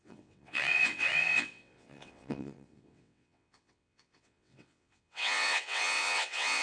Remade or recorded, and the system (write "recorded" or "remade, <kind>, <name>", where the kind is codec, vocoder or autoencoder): remade, vocoder, WaveNeXt